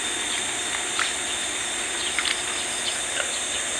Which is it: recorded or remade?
recorded